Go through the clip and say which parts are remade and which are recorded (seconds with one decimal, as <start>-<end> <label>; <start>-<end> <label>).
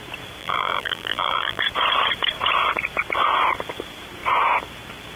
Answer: 0.0-0.4 recorded; 0.4-1.6 remade; 1.6-5.2 recorded